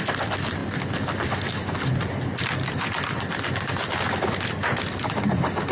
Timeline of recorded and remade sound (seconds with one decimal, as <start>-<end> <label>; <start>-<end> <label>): 0.0-5.7 recorded